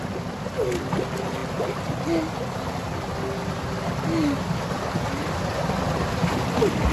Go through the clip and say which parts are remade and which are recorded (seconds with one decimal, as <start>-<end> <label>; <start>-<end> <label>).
0.0-6.9 recorded